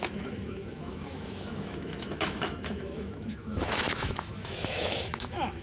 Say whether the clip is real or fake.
fake